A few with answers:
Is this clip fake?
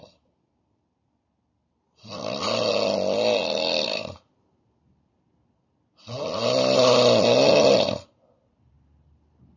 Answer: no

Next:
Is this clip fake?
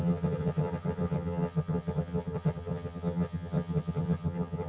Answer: yes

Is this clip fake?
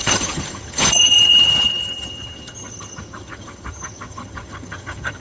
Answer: yes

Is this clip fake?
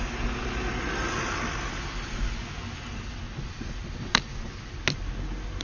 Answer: no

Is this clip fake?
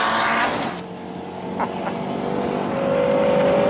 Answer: no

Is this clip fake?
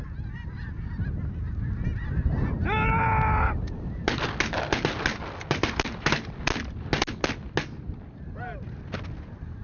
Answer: no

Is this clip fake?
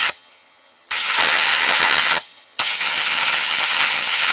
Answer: yes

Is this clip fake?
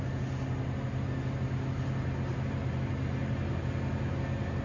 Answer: no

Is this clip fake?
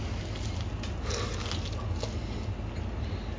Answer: no